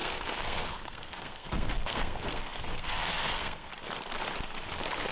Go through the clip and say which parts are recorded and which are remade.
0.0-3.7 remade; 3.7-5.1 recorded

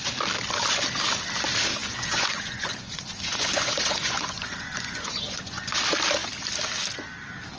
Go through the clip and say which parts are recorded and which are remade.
0.0-1.8 recorded; 1.8-5.8 remade; 5.8-7.6 recorded

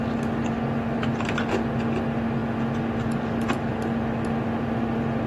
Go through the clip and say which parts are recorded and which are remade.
0.0-5.3 recorded